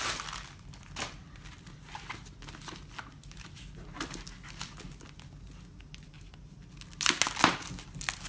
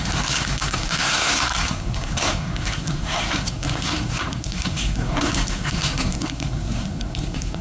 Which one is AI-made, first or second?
second